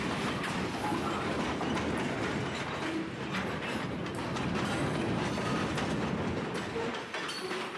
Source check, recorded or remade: recorded